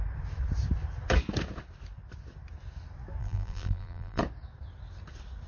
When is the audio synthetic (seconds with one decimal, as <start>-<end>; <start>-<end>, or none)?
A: 3.2-4.2